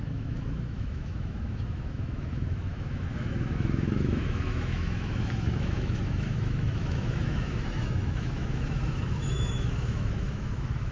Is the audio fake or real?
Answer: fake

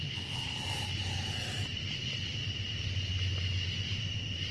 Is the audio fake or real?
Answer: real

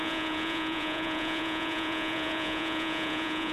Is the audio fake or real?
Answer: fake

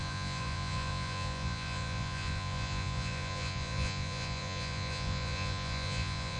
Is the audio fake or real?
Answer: fake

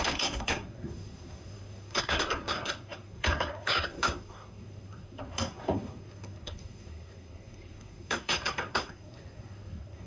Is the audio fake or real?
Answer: fake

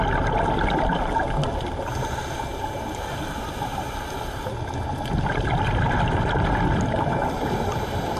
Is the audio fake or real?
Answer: real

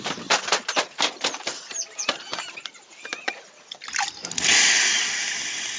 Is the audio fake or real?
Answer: real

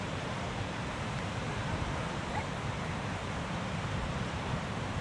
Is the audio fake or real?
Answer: fake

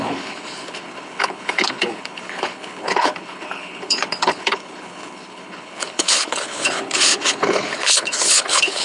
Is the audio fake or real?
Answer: fake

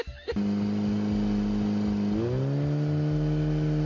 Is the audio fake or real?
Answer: real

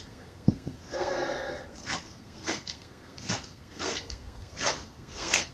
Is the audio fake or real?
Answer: fake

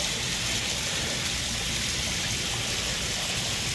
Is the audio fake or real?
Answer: fake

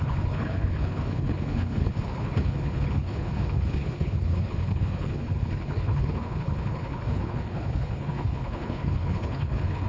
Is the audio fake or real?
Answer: fake